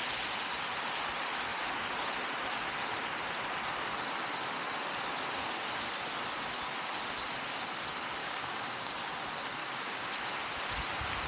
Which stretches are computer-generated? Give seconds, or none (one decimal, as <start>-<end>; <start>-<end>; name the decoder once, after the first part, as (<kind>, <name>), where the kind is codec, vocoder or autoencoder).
8.2-8.9 (codec, DAC); 9.6-10.1